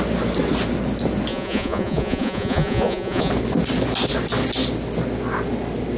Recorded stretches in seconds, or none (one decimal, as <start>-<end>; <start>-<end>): 0.0-1.3; 3.3-6.0